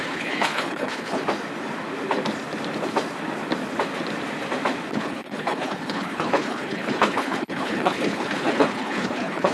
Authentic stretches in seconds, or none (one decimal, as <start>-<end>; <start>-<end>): 1.2-4.9